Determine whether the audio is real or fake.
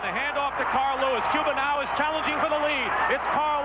real